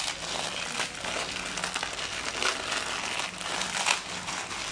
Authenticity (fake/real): real